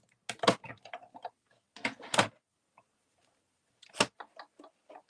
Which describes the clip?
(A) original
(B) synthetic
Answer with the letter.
A